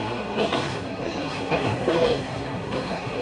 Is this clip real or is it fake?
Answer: fake